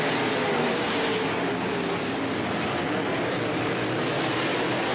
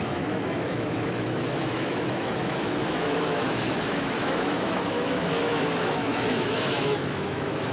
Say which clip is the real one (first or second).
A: first